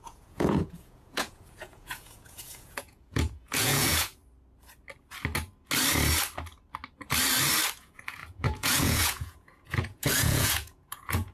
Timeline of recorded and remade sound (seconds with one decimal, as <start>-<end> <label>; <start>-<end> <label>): 0.0-4.2 remade; 4.2-7.8 recorded; 7.8-11.3 remade